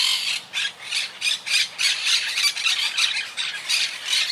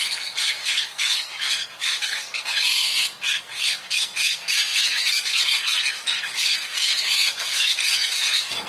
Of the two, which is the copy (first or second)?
second